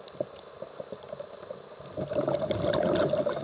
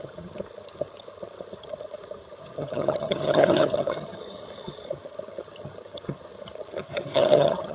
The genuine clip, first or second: first